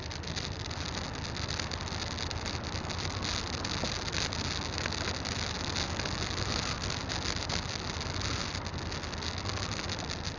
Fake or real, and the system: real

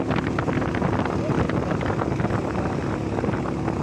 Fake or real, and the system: real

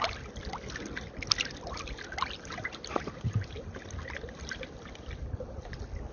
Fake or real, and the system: real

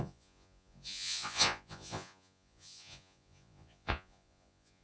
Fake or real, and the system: fake, vocoder, Vocos